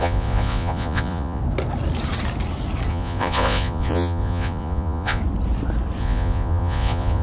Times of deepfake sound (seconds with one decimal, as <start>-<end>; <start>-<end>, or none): 0.0-1.4; 2.9-5.2; 6.0-7.2